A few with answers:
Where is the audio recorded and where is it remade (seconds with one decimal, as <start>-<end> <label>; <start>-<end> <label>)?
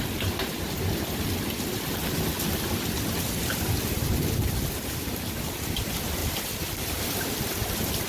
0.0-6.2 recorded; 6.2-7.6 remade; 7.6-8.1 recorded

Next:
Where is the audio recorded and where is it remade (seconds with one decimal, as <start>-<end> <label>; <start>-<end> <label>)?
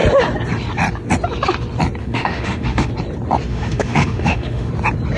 0.0-2.0 recorded; 2.0-2.9 remade; 2.9-3.5 recorded; 3.5-4.7 remade; 4.7-5.2 recorded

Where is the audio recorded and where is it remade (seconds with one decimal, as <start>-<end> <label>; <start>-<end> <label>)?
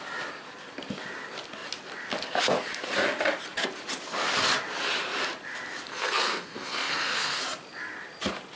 0.0-5.9 recorded; 5.9-7.4 remade; 7.4-8.6 recorded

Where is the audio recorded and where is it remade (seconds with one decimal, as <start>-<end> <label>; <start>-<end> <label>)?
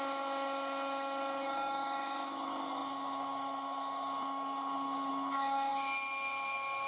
0.0-6.9 remade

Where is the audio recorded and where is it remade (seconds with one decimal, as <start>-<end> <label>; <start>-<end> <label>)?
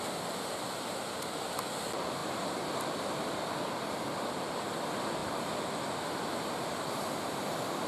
0.0-7.9 recorded